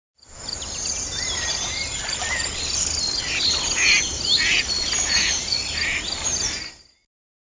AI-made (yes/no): no